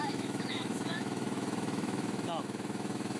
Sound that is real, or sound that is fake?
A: fake